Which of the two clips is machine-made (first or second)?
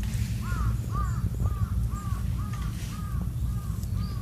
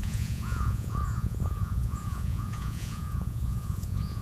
second